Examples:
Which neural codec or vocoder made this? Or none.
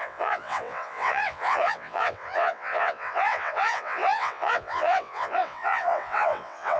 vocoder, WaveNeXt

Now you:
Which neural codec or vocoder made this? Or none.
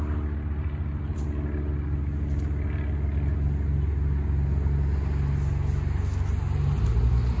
none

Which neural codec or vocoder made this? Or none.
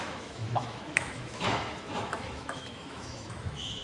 autoencoder, DAC-VAE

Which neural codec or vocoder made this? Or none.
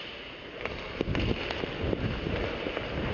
none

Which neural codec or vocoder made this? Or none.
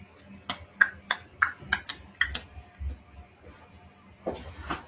none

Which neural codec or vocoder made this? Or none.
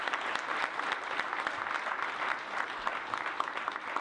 none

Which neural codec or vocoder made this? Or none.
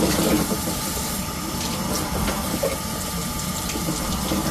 none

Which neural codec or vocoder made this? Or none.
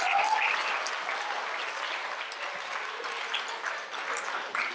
none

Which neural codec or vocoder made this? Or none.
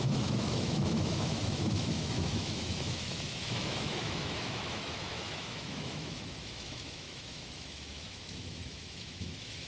autoencoder, DAC-VAE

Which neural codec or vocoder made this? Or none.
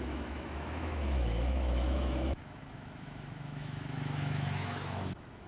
autoencoder, DAC-VAE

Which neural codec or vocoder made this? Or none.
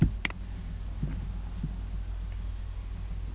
none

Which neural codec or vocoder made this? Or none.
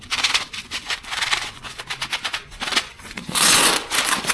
vocoder, Vocos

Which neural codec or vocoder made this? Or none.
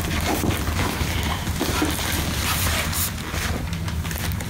none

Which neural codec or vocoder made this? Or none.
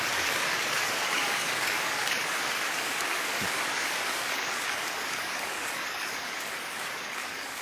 codec, DAC